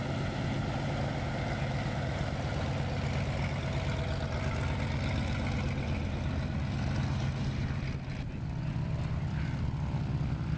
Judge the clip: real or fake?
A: real